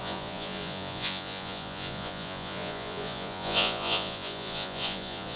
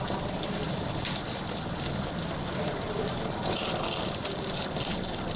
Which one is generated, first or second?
first